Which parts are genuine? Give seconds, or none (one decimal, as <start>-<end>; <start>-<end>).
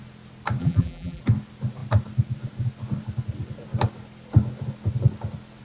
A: 0.0-0.6; 1.2-5.6